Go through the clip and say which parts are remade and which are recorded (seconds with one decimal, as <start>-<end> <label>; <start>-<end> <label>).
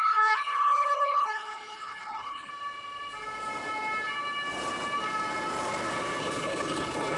0.0-2.5 remade; 2.5-6.2 recorded; 6.2-7.2 remade